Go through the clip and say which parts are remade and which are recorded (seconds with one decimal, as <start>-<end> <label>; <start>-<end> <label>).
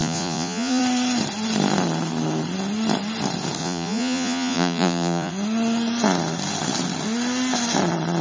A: 0.0-0.8 remade; 0.8-3.6 recorded; 3.6-5.3 remade; 5.3-8.2 recorded